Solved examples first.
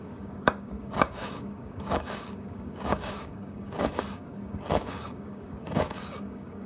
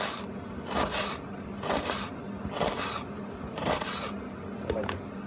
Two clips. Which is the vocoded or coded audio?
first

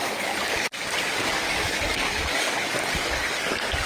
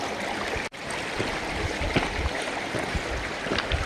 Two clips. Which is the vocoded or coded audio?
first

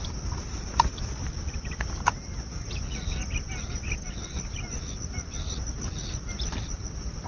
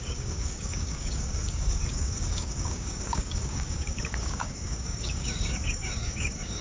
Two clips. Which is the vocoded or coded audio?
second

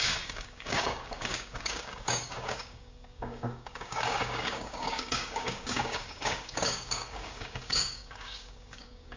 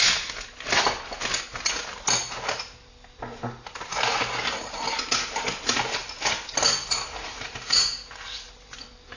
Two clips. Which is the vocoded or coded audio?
first